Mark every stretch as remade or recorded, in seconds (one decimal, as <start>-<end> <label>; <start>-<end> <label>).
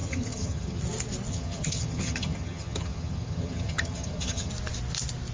0.0-0.8 remade; 0.8-1.3 recorded; 1.3-4.5 remade; 4.5-5.3 recorded